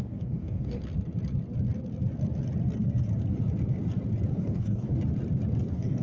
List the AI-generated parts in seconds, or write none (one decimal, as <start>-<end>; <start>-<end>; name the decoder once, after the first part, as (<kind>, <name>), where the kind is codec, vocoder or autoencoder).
0.0-0.8 (codec, DAC); 4.4-4.9; 5.6-6.0